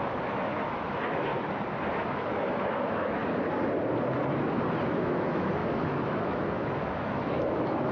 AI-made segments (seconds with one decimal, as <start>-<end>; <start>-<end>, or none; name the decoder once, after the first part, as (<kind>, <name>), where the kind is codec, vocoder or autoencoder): 0.0-1.3 (autoencoder, DAC-VAE); 2.1-3.2; 4.9-7.9